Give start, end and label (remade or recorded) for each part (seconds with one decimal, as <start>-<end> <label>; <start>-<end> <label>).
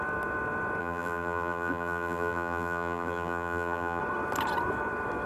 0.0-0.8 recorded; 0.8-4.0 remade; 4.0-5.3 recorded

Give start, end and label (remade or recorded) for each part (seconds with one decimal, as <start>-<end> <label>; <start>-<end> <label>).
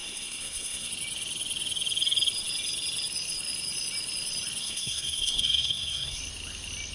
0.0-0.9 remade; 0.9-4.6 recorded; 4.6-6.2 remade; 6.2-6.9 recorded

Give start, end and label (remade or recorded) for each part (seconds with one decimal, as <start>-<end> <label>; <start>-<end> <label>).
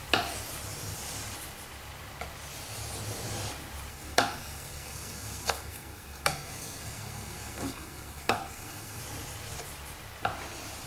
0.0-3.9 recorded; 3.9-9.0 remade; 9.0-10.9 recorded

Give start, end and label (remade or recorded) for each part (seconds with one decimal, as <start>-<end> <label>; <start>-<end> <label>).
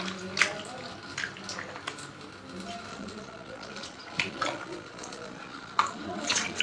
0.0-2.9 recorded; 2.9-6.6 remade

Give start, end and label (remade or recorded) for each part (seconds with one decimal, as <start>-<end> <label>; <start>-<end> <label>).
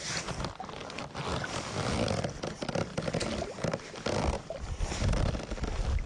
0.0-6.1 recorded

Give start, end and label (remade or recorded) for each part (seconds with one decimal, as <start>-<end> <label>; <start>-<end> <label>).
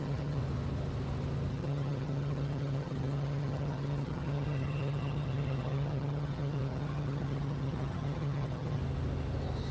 0.0-0.4 remade; 0.4-1.5 recorded; 1.5-8.8 remade; 8.8-9.7 recorded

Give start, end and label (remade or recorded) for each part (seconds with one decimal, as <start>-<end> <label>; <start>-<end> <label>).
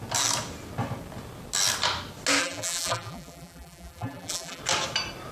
0.0-2.4 recorded; 2.4-4.6 remade; 4.6-5.3 recorded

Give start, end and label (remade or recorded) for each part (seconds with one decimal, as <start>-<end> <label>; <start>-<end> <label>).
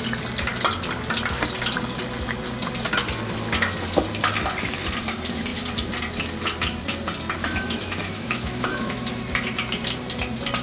0.0-7.4 recorded; 7.4-9.2 remade; 9.2-10.6 recorded